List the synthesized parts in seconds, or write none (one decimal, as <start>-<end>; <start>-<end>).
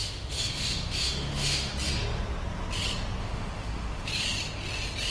0.0-1.7; 3.2-4.1